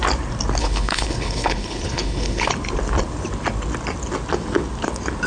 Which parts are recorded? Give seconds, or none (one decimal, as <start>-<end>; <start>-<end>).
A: 0.0-0.6; 2.5-5.3